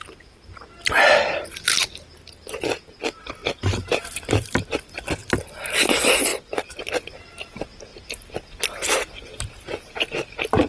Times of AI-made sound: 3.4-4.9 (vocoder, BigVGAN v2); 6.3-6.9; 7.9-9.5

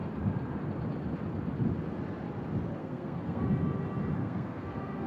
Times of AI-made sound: 2.8-3.4 (codec, SNAC); 4.2-5.1

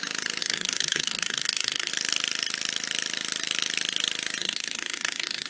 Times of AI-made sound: 0.4-1.9 (codec, SNAC); 4.4-5.5

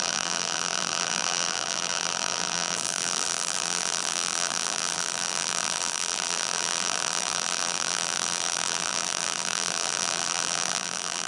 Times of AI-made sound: 0.0-11.3 (vocoder, BigVGAN v2)

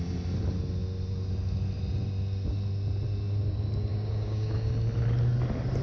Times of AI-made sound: 3.9-4.7 (codec, DAC)

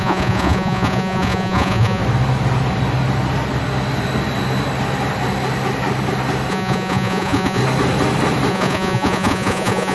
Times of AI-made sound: 0.0-2.0 (vocoder, Vocos); 6.5-7.6; 8.5-9.9

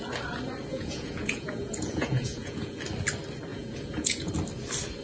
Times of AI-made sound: 0.7-2.8 (vocoder, Vocos); 3.5-4.3